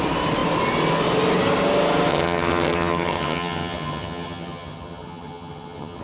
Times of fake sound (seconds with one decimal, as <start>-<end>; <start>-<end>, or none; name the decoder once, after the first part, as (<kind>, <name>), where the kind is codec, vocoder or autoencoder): 2.1-6.0 (vocoder, HiFi-GAN)